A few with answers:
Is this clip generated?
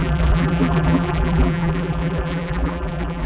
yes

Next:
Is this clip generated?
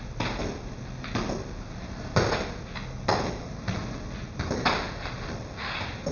no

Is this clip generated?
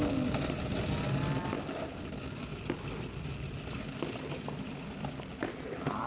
no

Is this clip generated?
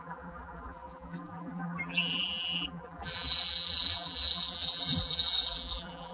yes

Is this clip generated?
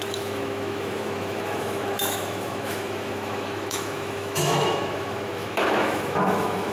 yes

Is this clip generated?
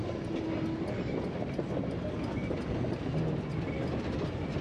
no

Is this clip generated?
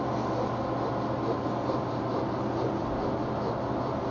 no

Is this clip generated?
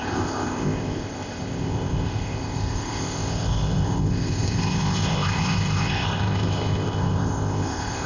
yes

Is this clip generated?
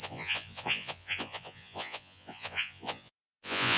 yes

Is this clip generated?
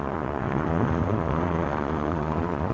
yes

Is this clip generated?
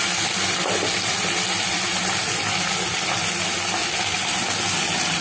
no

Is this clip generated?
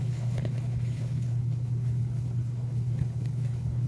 yes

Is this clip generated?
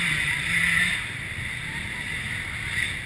no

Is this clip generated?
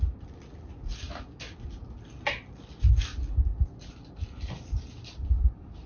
no